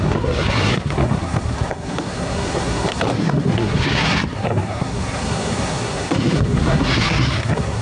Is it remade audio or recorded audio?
remade